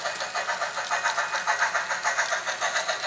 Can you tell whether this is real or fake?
real